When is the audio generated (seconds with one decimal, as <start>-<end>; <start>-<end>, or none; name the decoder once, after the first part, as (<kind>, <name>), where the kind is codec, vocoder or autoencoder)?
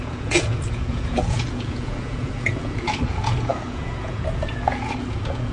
0.0-5.5 (vocoder, Vocos)